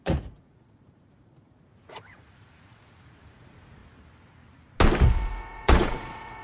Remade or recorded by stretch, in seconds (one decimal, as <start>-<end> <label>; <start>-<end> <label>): 0.0-3.8 remade; 3.8-5.3 recorded; 5.3-6.4 remade